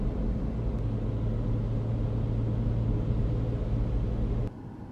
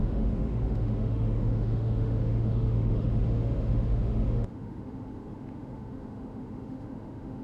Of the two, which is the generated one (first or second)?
second